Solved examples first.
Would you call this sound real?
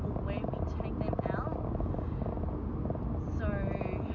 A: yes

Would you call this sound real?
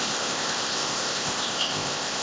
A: no